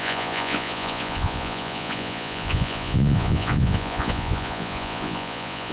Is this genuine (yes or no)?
no